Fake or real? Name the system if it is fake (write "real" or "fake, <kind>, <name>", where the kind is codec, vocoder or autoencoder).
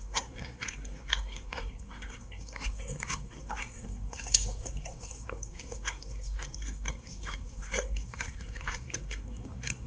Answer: fake, codec, SNAC